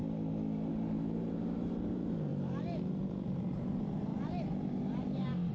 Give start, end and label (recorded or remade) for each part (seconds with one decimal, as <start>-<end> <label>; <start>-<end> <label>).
0.0-0.7 recorded; 0.7-2.3 remade; 2.3-3.5 recorded; 3.5-4.1 remade; 4.1-5.5 recorded